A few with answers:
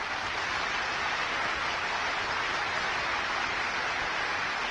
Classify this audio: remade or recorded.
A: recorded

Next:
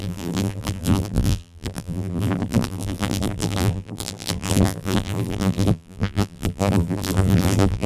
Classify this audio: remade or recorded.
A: remade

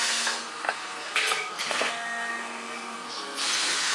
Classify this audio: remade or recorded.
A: remade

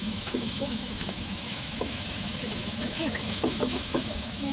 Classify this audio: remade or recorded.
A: remade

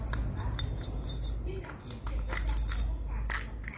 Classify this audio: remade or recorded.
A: recorded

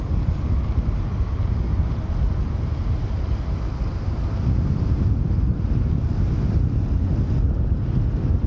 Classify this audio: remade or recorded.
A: recorded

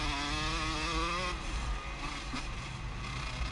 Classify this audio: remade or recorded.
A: recorded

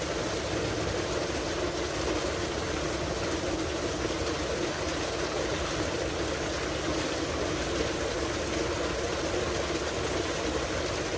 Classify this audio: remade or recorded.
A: recorded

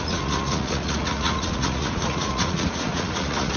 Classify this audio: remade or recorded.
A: remade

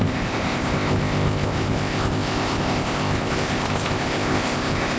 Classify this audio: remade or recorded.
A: remade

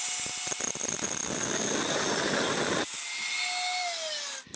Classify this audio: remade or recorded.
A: recorded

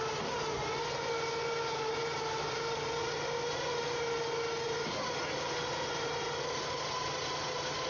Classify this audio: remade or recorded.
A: recorded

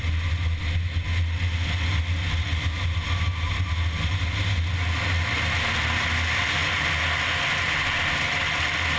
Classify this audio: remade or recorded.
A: recorded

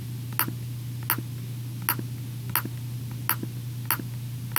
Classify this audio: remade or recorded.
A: recorded